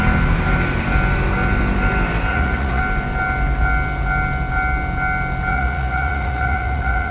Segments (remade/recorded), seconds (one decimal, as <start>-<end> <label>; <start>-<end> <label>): 0.0-2.3 recorded; 2.3-2.8 remade; 2.8-5.5 recorded; 5.5-7.1 remade